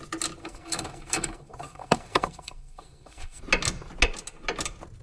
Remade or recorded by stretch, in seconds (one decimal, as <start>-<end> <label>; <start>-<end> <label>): 0.0-0.4 recorded; 0.4-3.4 remade; 3.4-5.0 recorded